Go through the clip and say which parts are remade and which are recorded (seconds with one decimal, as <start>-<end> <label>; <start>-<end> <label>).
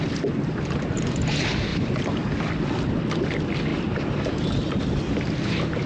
0.0-1.7 recorded; 1.7-2.2 remade; 2.2-3.7 recorded; 3.7-4.8 remade; 4.8-5.9 recorded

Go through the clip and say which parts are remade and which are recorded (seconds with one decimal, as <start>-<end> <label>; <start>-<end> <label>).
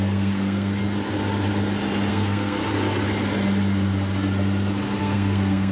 0.0-0.8 remade; 0.8-2.1 recorded; 2.1-2.6 remade; 2.6-5.0 recorded; 5.0-5.7 remade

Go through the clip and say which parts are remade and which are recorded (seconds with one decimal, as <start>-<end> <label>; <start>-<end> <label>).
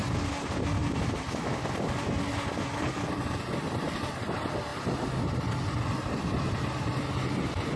0.0-7.8 recorded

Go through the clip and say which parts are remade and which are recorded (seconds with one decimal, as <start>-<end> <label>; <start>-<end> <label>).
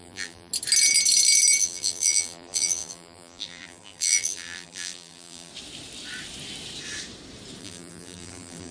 0.0-0.5 remade; 0.5-1.6 recorded; 1.6-5.5 remade; 5.5-7.6 recorded; 7.6-8.7 remade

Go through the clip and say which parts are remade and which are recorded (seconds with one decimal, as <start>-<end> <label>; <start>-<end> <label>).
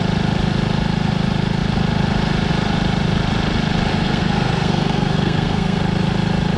0.0-3.9 recorded; 3.9-5.8 remade; 5.8-6.6 recorded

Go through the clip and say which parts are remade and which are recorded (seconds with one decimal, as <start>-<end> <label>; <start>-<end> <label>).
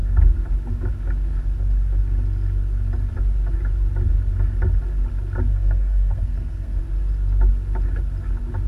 0.0-5.5 recorded; 5.5-6.8 remade; 6.8-8.7 recorded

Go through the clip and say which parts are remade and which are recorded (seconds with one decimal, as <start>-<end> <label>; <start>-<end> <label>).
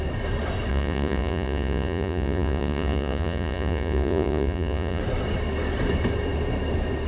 0.0-0.7 recorded; 0.7-5.0 remade; 5.0-7.1 recorded